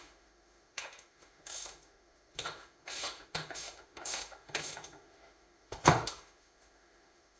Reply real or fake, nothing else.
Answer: fake